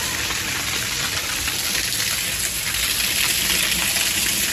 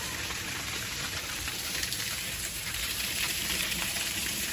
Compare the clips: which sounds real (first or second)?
first